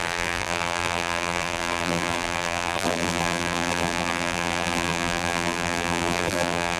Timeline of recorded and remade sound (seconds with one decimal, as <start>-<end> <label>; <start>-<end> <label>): 0.0-6.8 remade